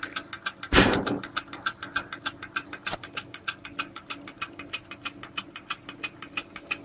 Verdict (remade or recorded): recorded